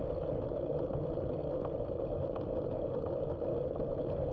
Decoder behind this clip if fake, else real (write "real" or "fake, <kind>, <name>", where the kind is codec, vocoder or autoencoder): real